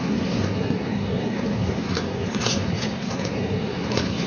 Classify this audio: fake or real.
fake